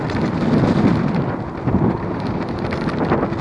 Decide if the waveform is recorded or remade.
recorded